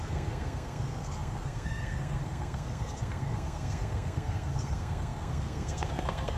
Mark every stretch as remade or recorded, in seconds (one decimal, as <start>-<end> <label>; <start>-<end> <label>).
0.0-6.4 remade